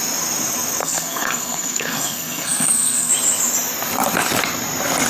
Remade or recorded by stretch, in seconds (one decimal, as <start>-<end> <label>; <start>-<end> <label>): 0.0-0.8 recorded; 0.8-3.1 remade; 3.1-5.1 recorded